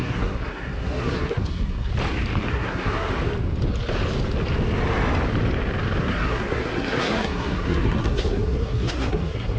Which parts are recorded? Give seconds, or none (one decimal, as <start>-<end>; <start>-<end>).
1.9-2.5; 3.1-6.0